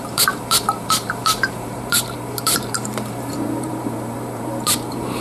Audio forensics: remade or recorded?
remade